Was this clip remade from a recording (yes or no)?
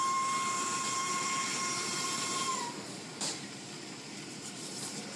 yes